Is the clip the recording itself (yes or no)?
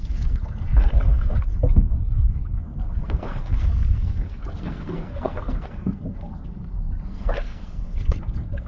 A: no